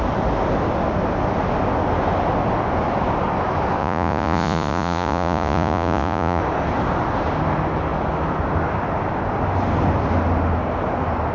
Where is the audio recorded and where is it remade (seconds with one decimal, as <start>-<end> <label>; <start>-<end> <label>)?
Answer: 0.0-3.8 recorded; 3.8-6.4 remade; 6.4-11.3 recorded